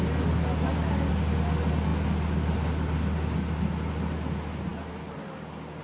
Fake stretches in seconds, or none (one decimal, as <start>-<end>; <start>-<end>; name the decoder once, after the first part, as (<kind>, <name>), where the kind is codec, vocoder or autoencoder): none